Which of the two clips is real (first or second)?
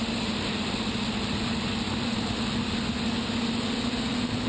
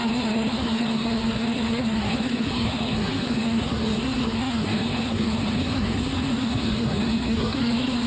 first